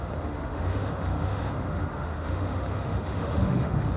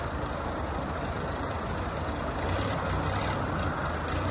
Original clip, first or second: second